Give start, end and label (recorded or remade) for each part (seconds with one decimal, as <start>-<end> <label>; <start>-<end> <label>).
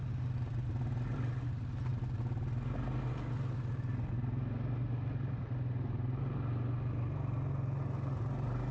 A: 0.0-8.7 recorded